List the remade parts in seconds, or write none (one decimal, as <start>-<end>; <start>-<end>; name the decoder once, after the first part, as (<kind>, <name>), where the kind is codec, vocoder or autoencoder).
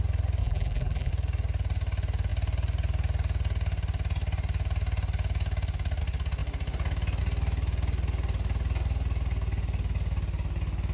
0.4-1.1 (vocoder, BigVGAN v2)